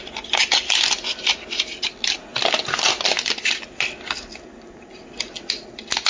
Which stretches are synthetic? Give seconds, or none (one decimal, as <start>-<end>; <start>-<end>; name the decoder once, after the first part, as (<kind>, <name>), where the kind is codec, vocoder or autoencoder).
none